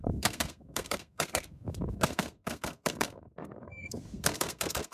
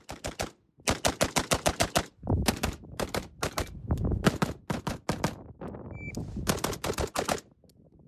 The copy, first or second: first